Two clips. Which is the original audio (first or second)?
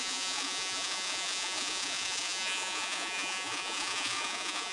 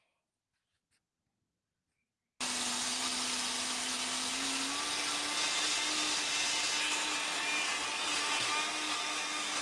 second